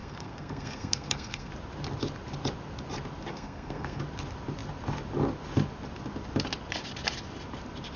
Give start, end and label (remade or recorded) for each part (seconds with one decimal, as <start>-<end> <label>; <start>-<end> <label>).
0.0-1.5 remade; 1.5-3.3 recorded; 3.3-4.0 remade; 4.0-8.0 recorded